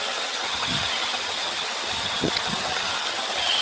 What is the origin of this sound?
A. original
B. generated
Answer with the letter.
B